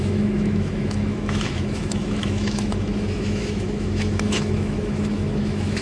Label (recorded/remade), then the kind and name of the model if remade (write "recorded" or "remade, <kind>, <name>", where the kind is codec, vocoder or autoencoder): remade, autoencoder, DAC-VAE